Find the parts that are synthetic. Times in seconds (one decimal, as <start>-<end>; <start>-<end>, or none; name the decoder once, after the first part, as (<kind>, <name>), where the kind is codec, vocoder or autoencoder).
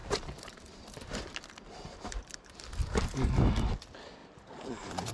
0.0-1.2 (vocoder, BigVGAN v2); 2.8-3.5; 4.2-5.1